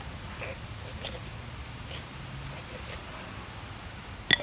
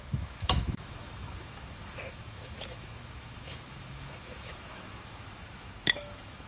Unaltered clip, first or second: first